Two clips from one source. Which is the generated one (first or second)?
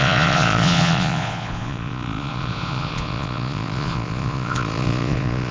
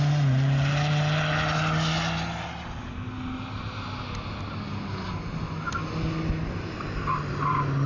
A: first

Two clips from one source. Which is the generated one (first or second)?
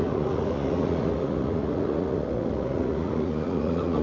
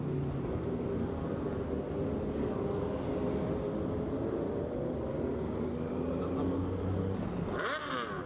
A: first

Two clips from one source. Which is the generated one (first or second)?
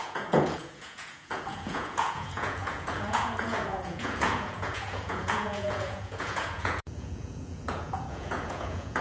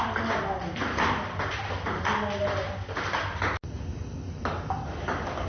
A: first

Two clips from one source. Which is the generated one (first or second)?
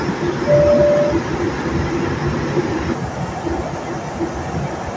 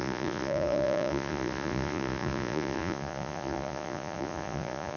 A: second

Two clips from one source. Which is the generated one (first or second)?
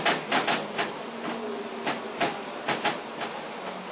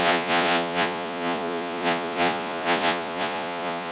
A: second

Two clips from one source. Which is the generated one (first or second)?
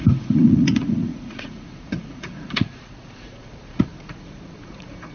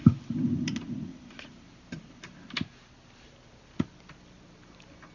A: first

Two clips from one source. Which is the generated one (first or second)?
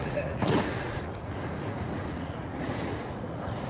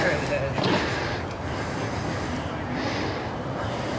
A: first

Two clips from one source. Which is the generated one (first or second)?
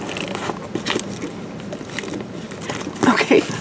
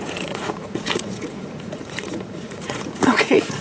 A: second